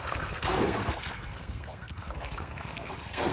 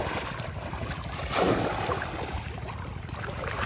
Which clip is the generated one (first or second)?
first